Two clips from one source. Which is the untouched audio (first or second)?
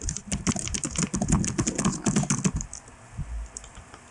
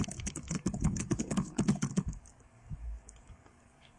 first